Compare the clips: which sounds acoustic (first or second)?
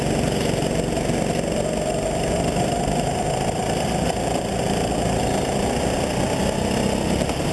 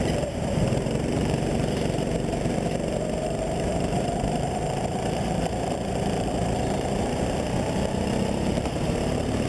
first